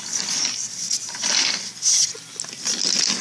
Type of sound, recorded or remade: recorded